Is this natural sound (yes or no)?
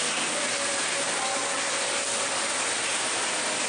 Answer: yes